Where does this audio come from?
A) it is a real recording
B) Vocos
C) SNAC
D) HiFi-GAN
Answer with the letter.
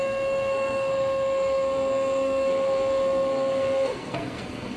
C